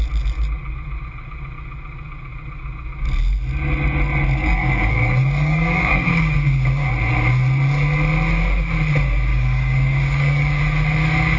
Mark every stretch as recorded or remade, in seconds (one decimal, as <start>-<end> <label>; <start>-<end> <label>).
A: 0.0-4.4 recorded; 4.4-6.9 remade; 6.9-9.3 recorded; 9.3-10.6 remade; 10.6-11.4 recorded